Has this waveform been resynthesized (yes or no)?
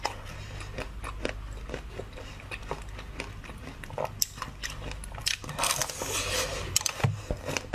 no